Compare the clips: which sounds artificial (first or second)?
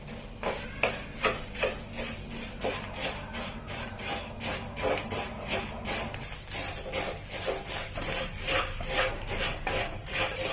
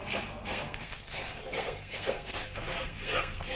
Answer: second